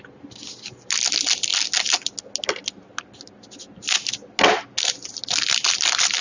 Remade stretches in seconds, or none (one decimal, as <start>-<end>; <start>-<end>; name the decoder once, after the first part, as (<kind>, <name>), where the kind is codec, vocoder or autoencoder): none